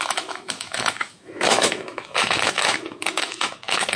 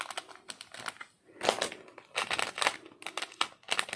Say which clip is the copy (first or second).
first